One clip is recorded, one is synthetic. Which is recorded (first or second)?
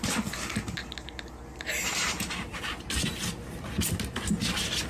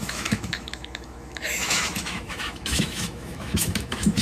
first